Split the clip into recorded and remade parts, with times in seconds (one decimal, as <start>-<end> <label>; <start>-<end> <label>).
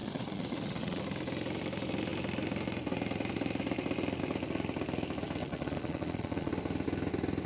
0.0-1.0 remade; 1.0-5.4 recorded; 5.4-6.5 remade; 6.5-7.5 recorded